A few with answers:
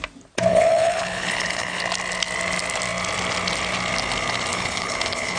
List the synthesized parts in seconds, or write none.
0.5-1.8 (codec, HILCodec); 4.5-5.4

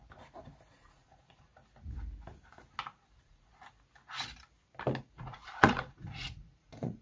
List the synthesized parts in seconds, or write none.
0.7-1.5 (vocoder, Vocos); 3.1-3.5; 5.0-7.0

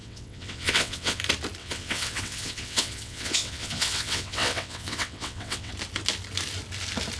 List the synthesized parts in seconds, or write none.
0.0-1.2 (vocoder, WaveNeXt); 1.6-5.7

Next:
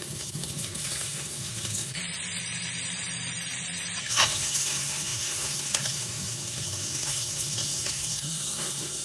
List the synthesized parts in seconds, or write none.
0.0-2.0 (codec, SNAC); 4.0-9.0

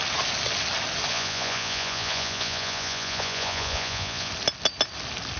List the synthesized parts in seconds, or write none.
1.1-4.3 (vocoder, Vocos)

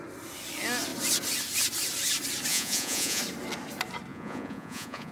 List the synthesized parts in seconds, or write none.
2.5-3.2 (vocoder, Vocos); 4.1-5.1